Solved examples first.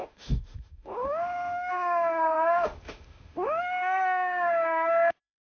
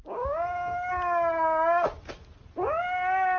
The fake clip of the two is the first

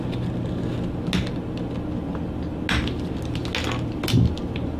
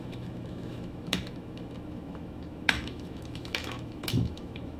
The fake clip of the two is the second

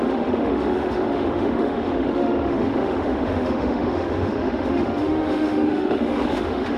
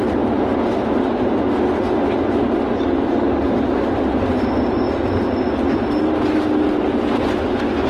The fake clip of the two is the first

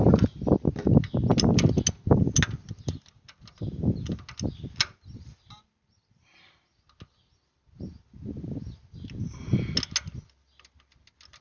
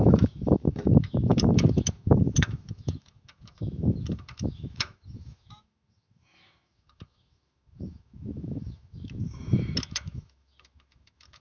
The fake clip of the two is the second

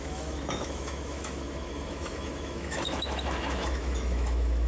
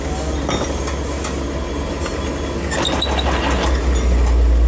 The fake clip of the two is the first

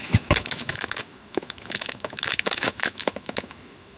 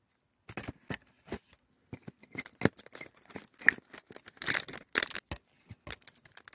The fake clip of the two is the first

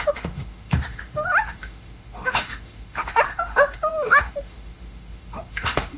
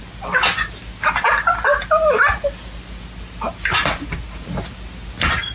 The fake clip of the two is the first